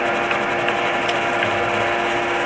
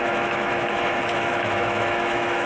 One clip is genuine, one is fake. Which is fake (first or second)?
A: second